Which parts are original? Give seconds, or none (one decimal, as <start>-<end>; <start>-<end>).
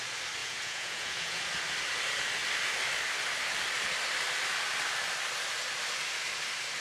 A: 0.0-0.4; 1.4-6.8